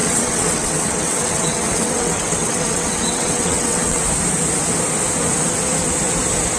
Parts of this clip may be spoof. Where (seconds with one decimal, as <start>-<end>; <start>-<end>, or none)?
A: 0.0-4.0